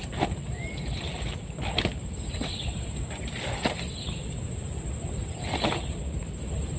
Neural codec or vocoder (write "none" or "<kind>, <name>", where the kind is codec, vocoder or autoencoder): none